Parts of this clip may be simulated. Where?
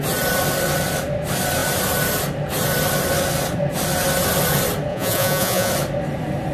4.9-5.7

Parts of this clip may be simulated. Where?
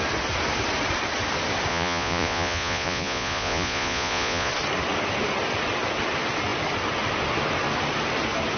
1.7-4.5